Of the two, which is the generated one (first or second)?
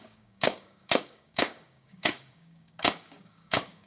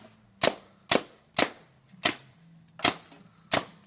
first